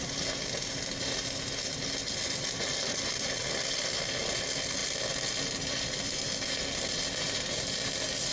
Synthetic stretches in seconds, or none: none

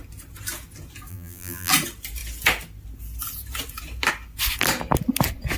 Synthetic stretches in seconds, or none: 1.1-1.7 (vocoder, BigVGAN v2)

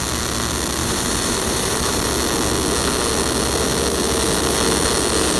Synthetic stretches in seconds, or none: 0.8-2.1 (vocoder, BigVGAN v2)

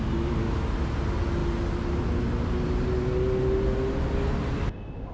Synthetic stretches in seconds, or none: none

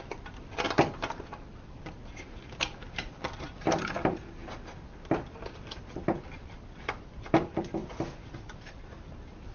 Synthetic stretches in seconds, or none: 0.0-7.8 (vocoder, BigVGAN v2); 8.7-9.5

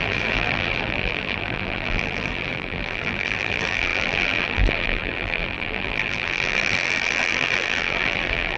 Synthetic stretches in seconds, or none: 0.0-8.6 (vocoder, BigVGAN v2)